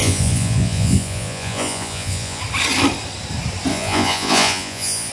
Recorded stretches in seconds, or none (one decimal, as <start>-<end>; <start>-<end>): 2.4-3.7